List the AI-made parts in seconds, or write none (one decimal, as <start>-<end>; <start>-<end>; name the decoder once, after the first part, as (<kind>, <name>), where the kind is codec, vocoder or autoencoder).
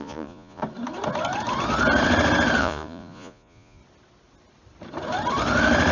0.0-0.6 (vocoder, Vocos); 2.6-3.8